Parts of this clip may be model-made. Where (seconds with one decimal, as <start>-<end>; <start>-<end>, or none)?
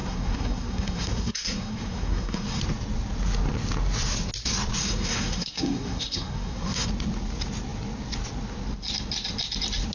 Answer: 0.0-2.6; 4.8-6.9